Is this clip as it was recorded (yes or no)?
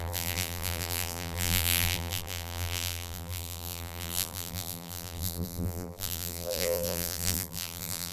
no